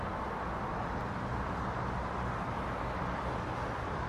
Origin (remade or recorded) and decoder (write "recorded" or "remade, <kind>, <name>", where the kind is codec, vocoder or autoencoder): recorded